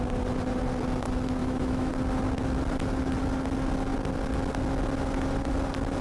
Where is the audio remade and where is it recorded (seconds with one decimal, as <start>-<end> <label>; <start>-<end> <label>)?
0.0-1.4 recorded; 1.4-1.9 remade; 1.9-6.0 recorded